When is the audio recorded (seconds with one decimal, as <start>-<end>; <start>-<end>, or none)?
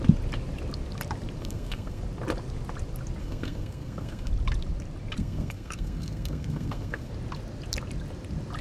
0.0-1.4; 2.0-3.2; 4.3-5.2; 7.1-8.6